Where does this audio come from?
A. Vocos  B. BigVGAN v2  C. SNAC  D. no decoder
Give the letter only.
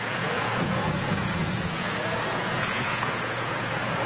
A